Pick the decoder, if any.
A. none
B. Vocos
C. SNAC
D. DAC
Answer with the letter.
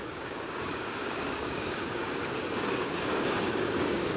D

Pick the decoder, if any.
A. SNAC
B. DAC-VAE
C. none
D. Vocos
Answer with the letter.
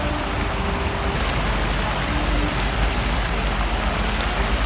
C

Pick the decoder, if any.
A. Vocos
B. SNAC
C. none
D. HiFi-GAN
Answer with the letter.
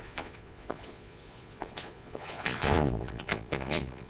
A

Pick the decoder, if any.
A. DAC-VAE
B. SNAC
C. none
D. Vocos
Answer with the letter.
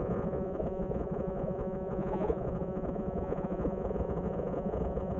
D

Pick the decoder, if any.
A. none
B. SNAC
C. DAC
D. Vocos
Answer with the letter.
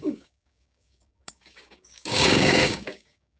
C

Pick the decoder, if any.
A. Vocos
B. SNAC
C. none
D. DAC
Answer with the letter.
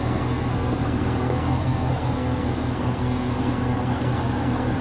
B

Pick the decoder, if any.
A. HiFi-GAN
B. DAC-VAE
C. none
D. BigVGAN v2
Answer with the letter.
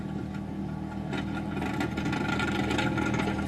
C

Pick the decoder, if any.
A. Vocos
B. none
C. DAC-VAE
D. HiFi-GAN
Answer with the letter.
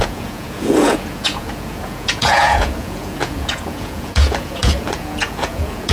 A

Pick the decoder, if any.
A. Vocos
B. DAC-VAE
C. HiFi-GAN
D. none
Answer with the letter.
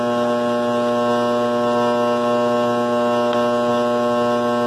D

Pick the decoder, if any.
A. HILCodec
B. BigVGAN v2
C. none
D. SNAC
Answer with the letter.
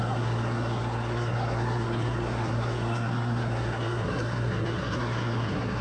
D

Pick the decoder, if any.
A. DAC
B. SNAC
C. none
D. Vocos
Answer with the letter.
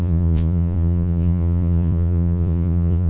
D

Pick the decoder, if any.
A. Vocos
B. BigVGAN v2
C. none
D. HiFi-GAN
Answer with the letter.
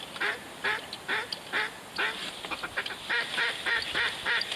C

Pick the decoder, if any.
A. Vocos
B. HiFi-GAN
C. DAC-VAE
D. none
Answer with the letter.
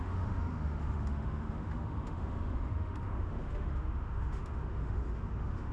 C